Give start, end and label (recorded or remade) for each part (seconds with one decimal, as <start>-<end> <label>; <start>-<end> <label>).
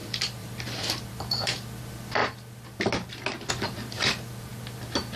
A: 0.0-2.2 remade; 2.2-3.5 recorded; 3.5-4.5 remade; 4.5-5.2 recorded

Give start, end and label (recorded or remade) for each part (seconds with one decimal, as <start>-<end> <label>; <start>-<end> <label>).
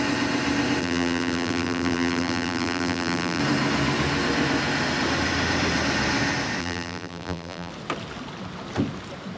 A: 0.0-0.8 recorded; 0.8-3.4 remade; 3.4-6.6 recorded; 6.6-7.7 remade; 7.7-9.4 recorded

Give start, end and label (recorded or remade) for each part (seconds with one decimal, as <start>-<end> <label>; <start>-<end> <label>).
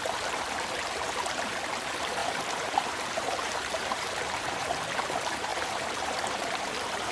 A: 0.0-7.1 remade